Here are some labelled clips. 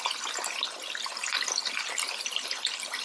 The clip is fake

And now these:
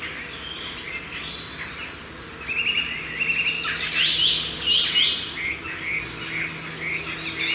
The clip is real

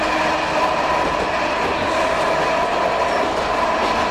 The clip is real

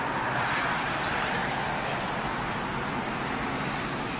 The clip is fake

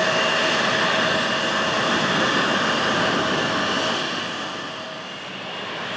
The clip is real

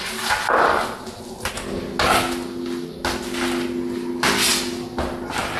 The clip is real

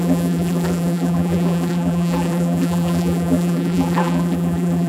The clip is fake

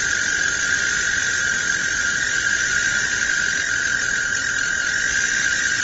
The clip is fake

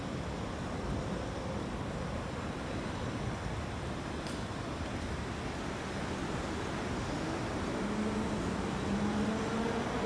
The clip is real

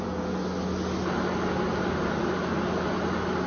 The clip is real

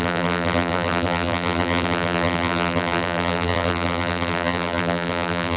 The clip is fake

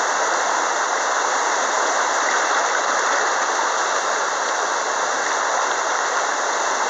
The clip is real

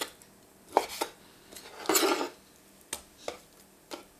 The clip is real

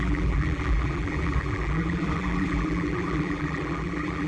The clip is fake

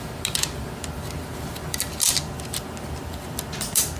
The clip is real